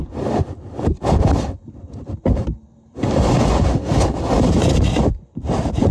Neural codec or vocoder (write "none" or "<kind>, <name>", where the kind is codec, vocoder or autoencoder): none